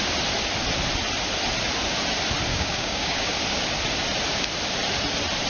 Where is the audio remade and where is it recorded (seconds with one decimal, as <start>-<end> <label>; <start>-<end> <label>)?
0.0-2.5 recorded; 2.5-3.3 remade; 3.3-5.5 recorded

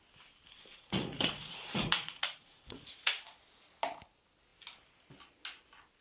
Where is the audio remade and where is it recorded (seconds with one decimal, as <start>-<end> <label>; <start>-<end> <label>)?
0.0-0.7 recorded; 0.7-3.1 remade; 3.1-6.0 recorded

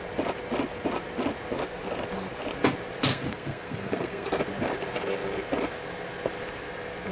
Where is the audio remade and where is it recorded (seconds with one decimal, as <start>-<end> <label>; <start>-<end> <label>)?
0.0-3.1 recorded; 3.1-4.4 remade; 4.4-7.1 recorded